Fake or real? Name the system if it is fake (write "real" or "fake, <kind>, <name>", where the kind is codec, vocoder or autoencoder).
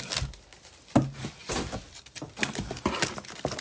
real